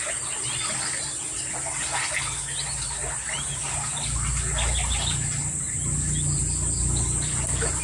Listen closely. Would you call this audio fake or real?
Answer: real